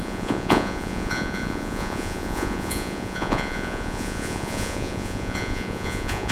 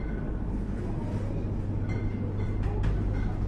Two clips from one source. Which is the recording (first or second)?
second